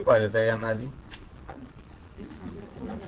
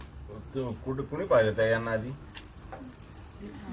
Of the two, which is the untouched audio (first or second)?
second